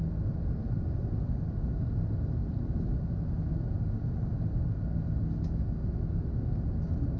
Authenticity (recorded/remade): recorded